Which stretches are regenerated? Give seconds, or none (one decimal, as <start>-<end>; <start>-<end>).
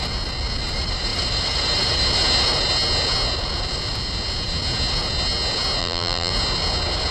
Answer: 5.8-6.3